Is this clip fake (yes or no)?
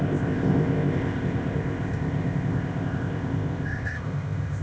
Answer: yes